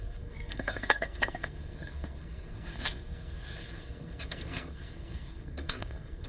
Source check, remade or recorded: remade